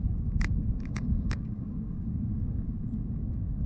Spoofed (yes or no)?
yes